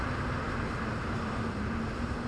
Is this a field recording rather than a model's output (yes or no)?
no